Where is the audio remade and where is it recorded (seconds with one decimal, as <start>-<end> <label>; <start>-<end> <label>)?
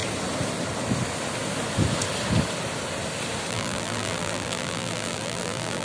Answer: 0.0-3.5 recorded; 3.5-5.8 remade